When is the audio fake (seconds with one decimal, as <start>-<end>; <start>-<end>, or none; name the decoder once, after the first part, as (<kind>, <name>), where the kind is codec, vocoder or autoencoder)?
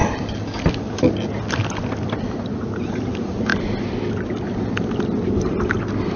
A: none